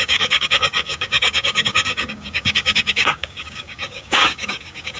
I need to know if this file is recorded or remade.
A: remade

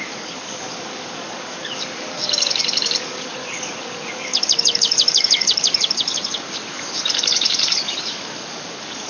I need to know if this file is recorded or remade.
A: remade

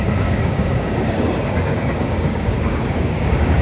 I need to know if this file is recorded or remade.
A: remade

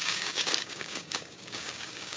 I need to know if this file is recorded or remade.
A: remade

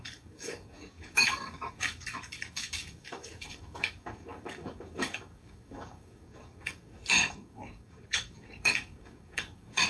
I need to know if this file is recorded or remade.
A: remade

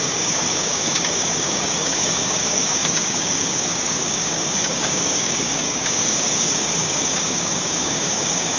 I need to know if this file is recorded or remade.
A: remade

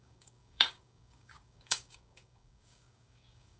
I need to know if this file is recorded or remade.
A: remade